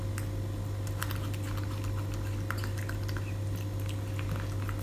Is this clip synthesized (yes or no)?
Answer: no